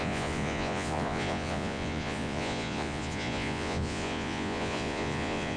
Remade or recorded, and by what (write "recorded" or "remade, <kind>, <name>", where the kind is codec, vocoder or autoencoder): remade, vocoder, Vocos